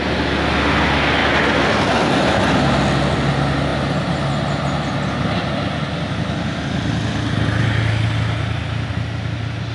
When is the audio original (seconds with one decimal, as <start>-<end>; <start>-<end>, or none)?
0.0-9.7